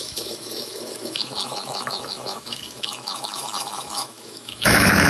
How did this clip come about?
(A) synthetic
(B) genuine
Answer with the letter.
A